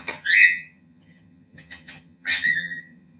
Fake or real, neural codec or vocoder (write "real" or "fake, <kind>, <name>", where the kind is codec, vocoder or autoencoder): fake, vocoder, HiFi-GAN